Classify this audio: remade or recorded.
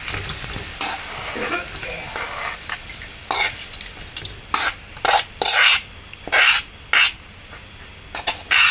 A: recorded